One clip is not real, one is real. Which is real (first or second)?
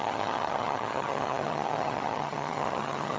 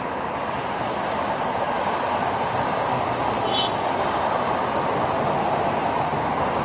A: second